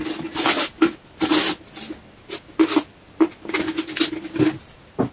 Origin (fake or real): real